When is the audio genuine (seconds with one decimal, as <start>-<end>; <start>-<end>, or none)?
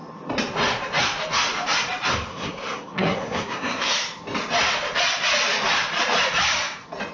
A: 0.0-2.3; 3.9-7.1